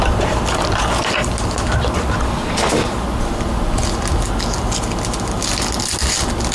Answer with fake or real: real